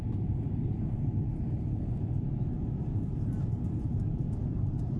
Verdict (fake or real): real